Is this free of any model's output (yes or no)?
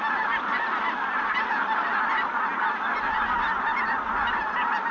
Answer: yes